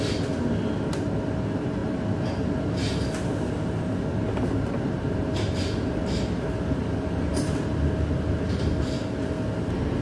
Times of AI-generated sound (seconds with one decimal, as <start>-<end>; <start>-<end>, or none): none